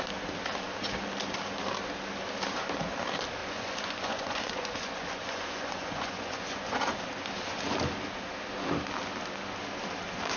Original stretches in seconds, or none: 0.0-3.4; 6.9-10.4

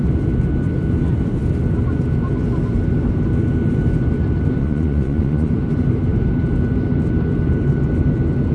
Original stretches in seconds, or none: 0.0-4.6; 5.5-8.5

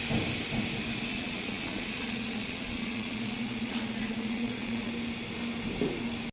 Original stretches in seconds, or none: 0.0-1.1; 4.9-6.3

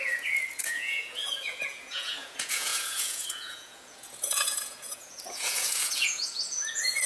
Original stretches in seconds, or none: none

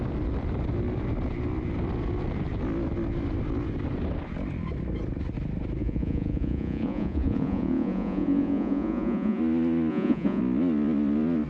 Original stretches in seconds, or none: 0.0-5.8; 9.4-9.9; 10.4-11.5

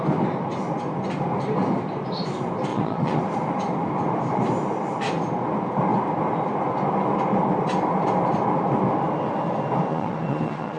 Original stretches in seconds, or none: 0.0-2.7; 3.2-9.9

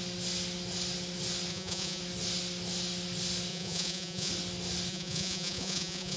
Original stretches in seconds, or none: 0.0-1.5; 2.0-3.5; 4.3-4.9

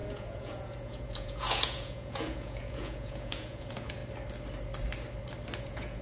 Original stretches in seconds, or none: 4.0-5.6